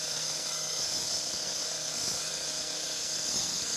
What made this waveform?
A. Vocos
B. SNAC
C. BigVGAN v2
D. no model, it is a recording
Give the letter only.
B